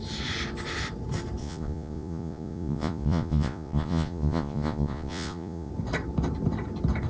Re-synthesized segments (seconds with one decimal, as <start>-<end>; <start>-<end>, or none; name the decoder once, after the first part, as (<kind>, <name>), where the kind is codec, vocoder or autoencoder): 1.4-5.7 (vocoder, Vocos)